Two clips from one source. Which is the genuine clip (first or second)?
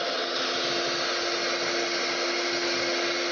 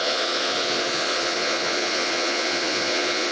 first